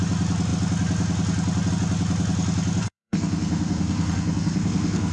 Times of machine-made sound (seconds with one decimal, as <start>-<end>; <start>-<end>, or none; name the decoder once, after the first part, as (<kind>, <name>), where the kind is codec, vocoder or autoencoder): 2.8-5.1 (codec, SNAC)